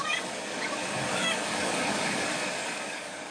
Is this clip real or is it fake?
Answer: fake